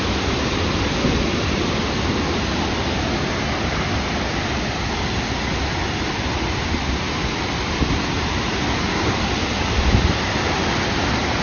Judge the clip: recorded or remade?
recorded